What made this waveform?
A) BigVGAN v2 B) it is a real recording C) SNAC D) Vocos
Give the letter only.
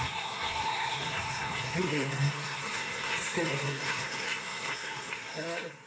C